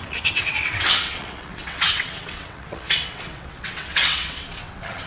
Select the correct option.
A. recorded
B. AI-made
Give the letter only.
B